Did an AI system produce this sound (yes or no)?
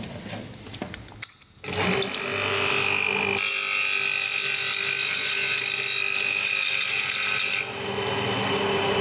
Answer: no